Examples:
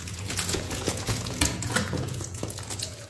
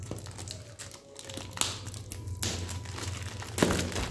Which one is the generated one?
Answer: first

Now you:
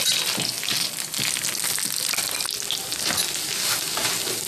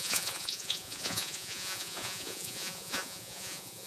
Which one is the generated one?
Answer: second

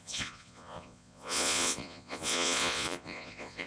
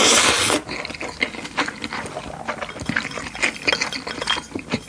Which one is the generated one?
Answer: first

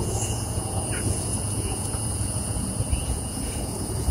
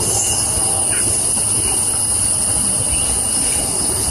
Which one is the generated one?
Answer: first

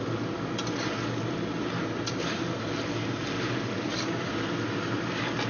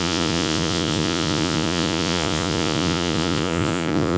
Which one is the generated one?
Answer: second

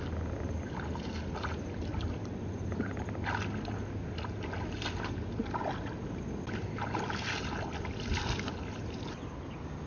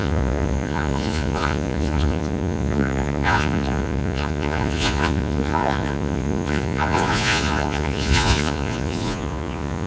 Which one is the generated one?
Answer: second